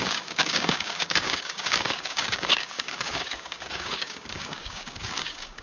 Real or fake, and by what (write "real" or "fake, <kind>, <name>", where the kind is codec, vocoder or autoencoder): fake, codec, DAC